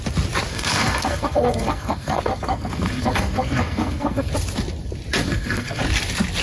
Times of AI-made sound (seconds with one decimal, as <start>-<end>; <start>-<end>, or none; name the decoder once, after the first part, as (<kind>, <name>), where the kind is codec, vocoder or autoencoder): 0.5-4.3 (codec, SNAC); 5.2-5.8

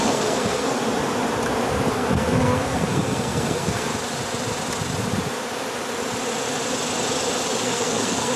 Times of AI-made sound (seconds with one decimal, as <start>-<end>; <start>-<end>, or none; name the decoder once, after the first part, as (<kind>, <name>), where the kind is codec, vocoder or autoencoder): 0.0-0.8 (codec, SNAC); 1.9-3.9; 7.6-8.4

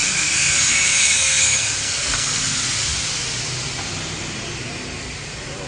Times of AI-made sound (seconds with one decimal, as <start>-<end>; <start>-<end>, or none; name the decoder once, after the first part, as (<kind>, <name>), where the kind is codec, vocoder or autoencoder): 0.0-2.4 (codec, SNAC)

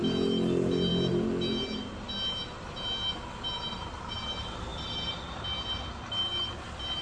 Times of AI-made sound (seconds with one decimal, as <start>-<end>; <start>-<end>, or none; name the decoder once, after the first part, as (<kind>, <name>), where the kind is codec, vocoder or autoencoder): none

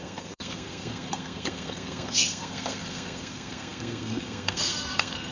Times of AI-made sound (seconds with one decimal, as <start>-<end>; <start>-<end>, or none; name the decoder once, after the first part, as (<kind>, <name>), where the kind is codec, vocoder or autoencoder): 0.0-5.3 (codec, SNAC)

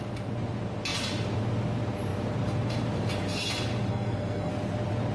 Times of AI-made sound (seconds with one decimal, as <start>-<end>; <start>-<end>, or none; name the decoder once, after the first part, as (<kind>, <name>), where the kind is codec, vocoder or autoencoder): 3.9-4.5 (codec, SNAC)

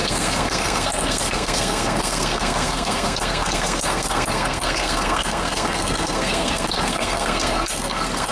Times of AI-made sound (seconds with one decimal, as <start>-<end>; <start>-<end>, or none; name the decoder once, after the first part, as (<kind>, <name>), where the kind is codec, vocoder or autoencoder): 0.0-8.3 (codec, SNAC)

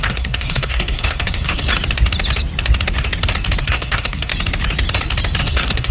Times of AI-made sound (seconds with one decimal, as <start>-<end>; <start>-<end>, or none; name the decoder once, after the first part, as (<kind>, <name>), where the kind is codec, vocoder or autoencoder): 0.0-1.7 (codec, SNAC); 3.6-4.3; 5.4-5.9